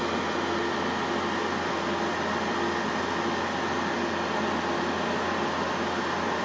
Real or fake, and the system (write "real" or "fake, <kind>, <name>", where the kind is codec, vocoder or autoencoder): real